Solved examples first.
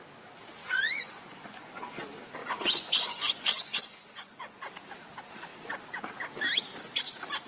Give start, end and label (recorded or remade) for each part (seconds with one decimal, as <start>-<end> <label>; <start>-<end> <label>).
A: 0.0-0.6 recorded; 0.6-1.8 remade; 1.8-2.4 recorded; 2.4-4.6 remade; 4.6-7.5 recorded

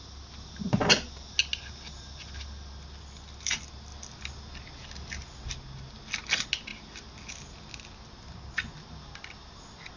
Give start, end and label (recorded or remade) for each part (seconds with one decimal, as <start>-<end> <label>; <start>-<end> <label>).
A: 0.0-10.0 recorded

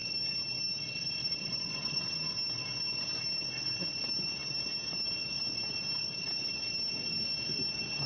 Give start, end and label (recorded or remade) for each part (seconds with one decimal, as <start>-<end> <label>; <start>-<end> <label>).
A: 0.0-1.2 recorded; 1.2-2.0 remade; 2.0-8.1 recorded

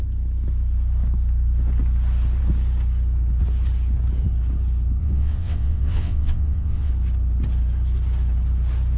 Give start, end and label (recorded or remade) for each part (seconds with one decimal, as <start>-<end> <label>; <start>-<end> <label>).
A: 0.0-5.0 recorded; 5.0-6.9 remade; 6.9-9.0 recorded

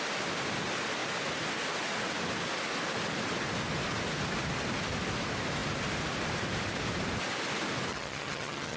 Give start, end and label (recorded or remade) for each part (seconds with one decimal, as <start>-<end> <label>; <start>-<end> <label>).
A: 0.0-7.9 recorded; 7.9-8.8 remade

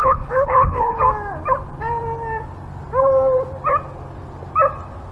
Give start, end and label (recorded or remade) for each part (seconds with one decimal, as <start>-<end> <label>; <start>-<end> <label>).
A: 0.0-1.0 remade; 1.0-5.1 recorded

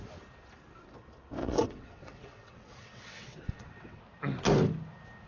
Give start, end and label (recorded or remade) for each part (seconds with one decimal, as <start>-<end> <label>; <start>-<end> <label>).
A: 0.0-1.4 recorded; 1.4-4.0 remade; 4.0-5.3 recorded

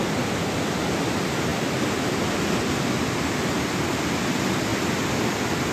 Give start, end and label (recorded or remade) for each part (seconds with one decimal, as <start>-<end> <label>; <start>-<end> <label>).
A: 0.0-5.7 recorded